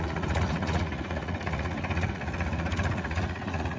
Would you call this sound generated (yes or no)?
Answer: yes